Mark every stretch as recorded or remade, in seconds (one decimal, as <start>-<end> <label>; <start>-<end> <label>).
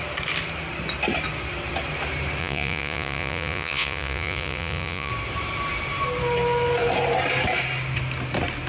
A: 0.0-2.4 recorded; 2.4-5.1 remade; 5.1-8.7 recorded